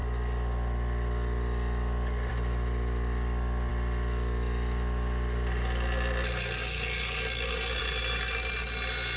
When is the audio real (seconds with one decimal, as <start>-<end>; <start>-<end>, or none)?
0.0-9.2